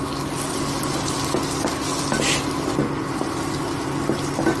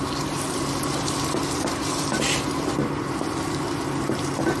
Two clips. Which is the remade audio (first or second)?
second